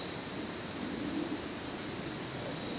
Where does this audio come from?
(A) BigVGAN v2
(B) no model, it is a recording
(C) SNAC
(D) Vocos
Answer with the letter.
B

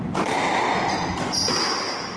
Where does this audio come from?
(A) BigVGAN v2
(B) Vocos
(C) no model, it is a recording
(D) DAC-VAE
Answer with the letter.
C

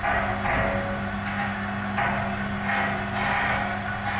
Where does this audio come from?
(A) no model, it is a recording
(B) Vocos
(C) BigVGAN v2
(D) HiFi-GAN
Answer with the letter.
A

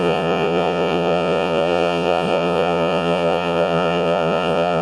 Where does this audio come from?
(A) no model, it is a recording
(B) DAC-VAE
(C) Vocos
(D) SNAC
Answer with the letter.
C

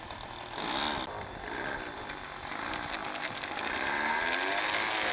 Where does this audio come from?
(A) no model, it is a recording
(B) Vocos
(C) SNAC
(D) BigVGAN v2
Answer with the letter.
A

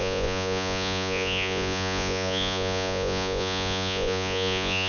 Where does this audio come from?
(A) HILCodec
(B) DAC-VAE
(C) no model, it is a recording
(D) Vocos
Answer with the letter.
D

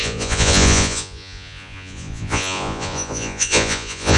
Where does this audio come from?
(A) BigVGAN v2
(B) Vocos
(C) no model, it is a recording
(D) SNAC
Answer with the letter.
B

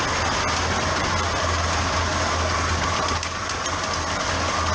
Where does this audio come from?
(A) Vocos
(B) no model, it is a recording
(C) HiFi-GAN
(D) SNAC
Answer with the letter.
B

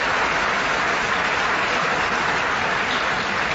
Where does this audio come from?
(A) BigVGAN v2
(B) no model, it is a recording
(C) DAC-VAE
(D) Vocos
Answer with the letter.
B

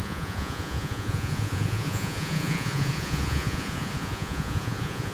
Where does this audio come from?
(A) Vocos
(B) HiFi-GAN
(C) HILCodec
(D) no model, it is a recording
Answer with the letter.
A